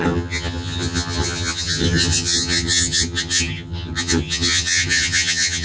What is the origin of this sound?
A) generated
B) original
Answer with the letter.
A